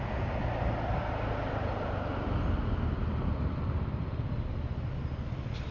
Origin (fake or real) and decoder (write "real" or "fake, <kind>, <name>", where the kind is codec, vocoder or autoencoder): real